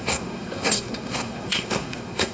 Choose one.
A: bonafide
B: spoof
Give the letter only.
B